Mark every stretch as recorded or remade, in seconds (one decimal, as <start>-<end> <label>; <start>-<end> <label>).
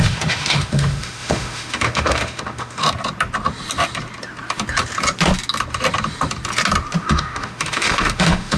0.0-2.8 remade; 2.8-7.0 recorded; 7.0-8.6 remade